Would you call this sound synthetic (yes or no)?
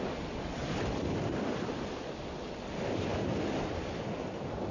no